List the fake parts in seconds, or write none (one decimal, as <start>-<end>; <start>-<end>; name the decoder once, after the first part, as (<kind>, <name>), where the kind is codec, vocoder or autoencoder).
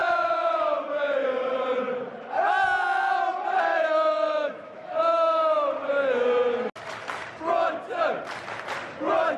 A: 0.0-0.6 (autoencoder, DAC-VAE); 3.7-5.7